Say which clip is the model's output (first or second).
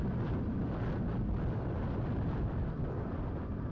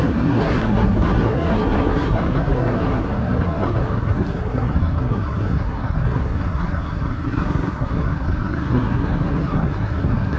second